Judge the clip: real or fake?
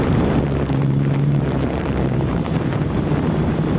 fake